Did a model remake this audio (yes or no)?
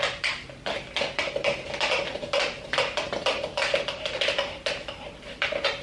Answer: no